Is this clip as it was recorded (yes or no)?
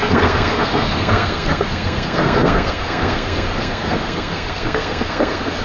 no